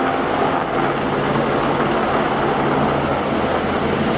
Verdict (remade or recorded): recorded